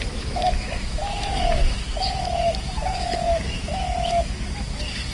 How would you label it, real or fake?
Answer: fake